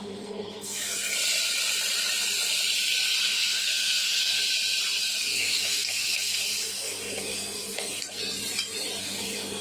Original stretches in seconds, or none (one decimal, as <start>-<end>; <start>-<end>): 1.1-3.2; 4.4-5.0; 8.2-9.0